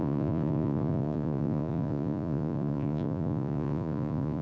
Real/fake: fake